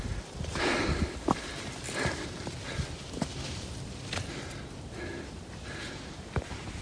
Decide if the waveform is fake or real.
fake